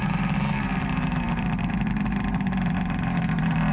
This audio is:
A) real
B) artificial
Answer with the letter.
B